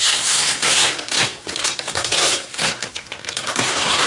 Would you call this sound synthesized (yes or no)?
yes